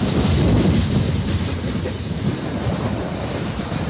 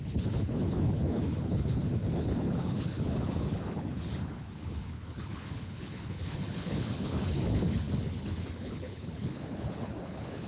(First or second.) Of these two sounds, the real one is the first